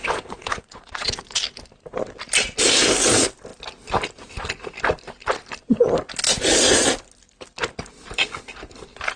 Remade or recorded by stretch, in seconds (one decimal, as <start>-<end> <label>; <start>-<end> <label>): 0.0-1.2 remade; 1.2-9.2 recorded